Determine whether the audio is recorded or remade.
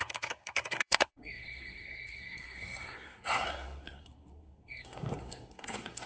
remade